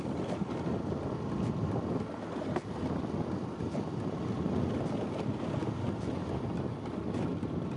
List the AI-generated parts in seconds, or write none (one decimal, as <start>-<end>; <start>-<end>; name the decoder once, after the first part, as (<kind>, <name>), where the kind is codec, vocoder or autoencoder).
none